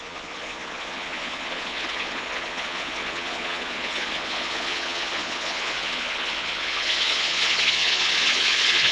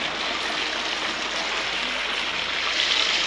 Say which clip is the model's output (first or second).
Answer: first